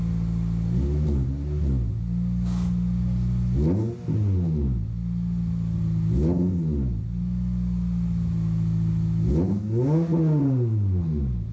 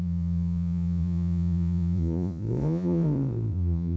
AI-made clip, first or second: second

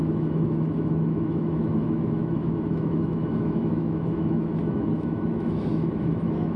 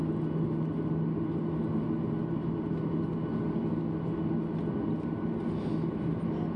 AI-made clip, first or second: first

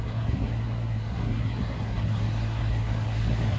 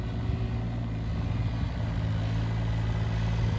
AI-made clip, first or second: first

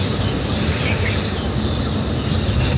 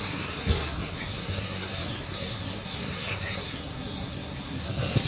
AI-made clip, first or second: second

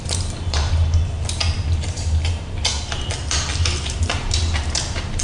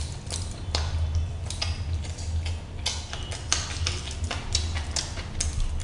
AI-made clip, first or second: first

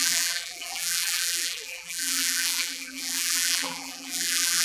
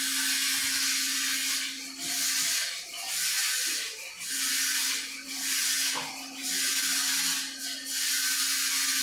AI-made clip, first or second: first